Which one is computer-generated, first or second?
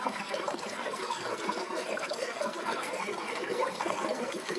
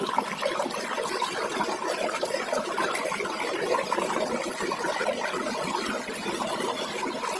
first